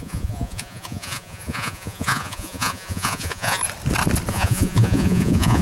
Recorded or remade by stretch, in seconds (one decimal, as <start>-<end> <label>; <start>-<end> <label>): 0.0-3.6 remade; 3.6-4.3 recorded; 4.3-5.6 remade

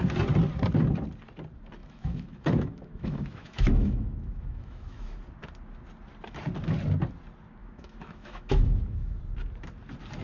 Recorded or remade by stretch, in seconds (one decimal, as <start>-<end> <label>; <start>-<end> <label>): 0.0-1.8 recorded; 1.8-5.2 remade; 5.2-7.6 recorded; 7.6-9.2 remade; 9.2-10.2 recorded

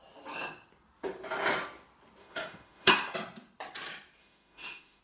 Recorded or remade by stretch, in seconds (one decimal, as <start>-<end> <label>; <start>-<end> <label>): 0.0-2.2 recorded; 2.2-2.9 remade; 2.9-4.2 recorded; 4.2-5.0 remade

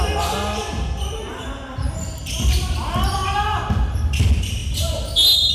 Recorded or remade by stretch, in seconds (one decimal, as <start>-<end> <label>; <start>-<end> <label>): 0.0-5.5 recorded

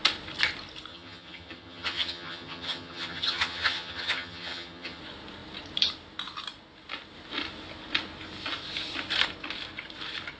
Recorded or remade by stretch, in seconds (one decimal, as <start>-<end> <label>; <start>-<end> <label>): 0.0-0.9 recorded; 0.9-5.0 remade; 5.0-10.4 recorded

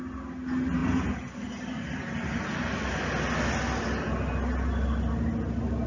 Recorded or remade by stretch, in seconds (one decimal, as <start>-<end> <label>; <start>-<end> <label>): 0.0-5.9 recorded